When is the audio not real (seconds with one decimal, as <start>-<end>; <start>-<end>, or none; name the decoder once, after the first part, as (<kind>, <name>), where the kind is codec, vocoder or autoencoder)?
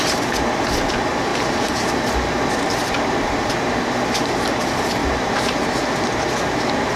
1.3-2.5 (vocoder, BigVGAN v2); 5.0-5.8